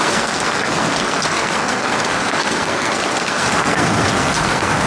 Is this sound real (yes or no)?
no